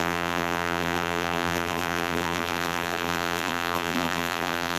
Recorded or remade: remade